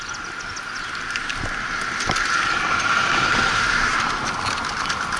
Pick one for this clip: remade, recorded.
recorded